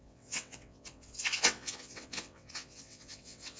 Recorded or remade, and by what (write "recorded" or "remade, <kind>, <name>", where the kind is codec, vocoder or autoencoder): remade, vocoder, WaveNeXt